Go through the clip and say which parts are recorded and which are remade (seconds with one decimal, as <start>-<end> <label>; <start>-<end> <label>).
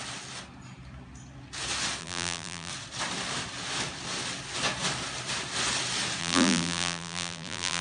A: 0.0-2.0 recorded; 2.0-2.7 remade; 2.7-6.2 recorded; 6.2-7.8 remade